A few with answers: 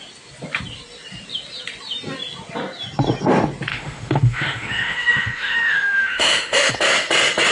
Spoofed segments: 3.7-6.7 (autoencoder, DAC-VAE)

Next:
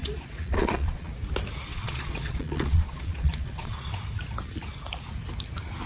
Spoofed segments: 0.0-1.1 (vocoder, Vocos); 1.7-3.9

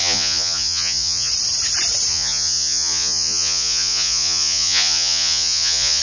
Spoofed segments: 0.0-1.3 (vocoder, Vocos); 2.1-6.0

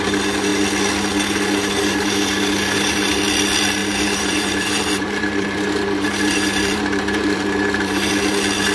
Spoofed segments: 3.8-8.1 (vocoder, BigVGAN v2)

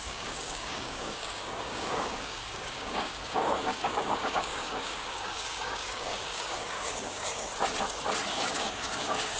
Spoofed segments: 0.0-7.5 (codec, DAC); 8.3-9.4